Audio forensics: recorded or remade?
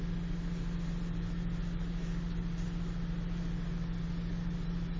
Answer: recorded